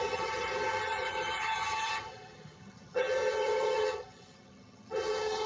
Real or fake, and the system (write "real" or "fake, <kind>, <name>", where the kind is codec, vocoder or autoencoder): fake, vocoder, HiFi-GAN